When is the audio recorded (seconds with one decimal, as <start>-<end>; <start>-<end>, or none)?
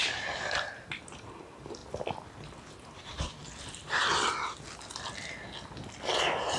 0.0-6.6